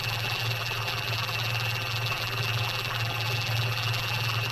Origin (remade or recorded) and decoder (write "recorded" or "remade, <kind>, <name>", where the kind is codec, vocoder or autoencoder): remade, vocoder, BigVGAN v2